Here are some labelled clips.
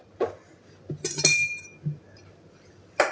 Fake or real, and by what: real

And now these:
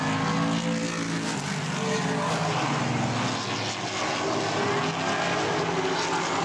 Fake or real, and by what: real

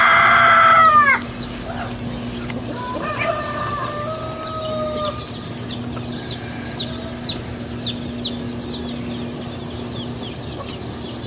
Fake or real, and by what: real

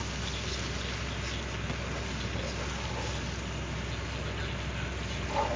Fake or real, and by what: real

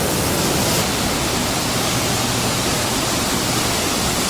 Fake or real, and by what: real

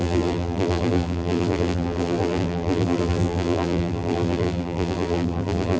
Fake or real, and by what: fake, vocoder, BigVGAN v2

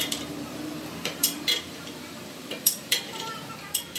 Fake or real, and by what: fake, vocoder, BigVGAN v2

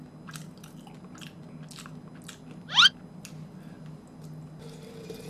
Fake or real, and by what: real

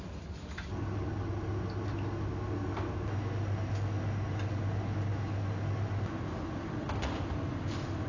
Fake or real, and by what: real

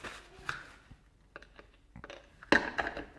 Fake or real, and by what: real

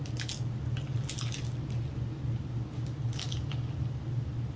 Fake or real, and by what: real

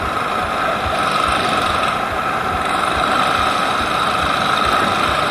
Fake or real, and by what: real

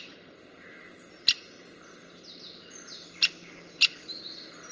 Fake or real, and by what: real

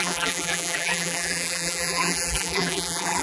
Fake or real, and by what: fake, vocoder, BigVGAN v2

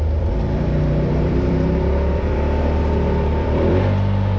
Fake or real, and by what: fake, vocoder, BigVGAN v2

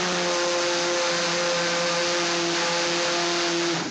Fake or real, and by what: real